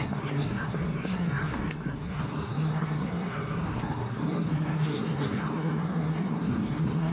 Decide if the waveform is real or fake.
fake